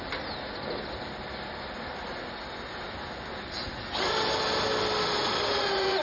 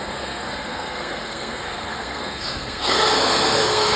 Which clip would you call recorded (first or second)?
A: first